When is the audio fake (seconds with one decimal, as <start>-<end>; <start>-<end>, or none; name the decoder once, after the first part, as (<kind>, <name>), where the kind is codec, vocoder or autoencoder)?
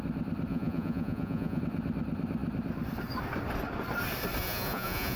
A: 0.5-1.6 (vocoder, Vocos); 4.4-5.2